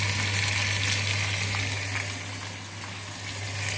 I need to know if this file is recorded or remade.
recorded